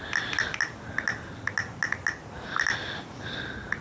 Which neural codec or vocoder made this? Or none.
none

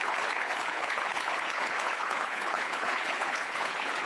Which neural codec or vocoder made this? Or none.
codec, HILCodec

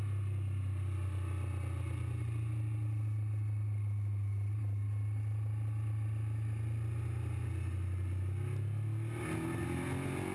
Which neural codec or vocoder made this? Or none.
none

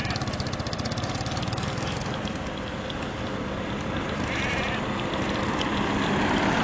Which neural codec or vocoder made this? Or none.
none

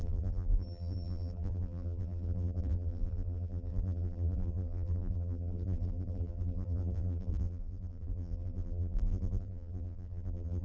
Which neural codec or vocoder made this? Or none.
vocoder, BigVGAN v2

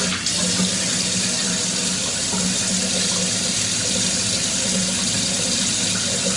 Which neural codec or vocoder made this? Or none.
none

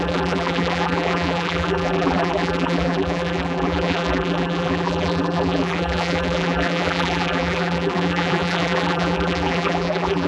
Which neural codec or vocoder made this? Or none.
vocoder, BigVGAN v2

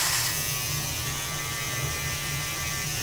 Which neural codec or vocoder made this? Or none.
vocoder, BigVGAN v2